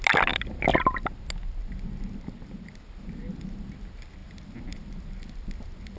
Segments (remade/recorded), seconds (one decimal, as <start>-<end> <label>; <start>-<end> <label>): 0.0-6.0 recorded